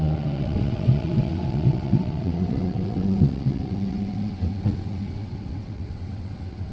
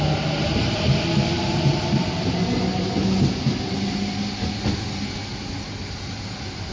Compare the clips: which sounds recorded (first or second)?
second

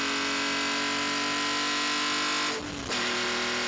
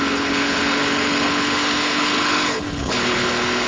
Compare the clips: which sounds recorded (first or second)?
first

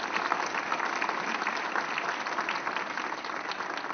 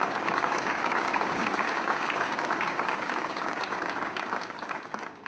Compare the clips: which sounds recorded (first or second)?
first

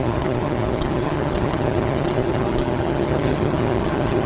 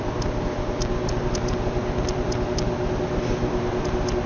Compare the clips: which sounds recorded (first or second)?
second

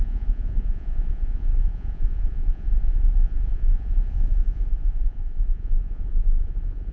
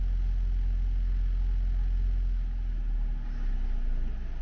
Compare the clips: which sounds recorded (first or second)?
second